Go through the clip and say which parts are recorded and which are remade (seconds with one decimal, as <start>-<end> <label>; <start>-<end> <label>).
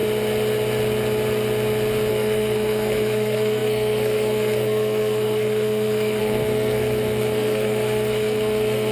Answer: 0.0-2.1 recorded; 2.1-8.9 remade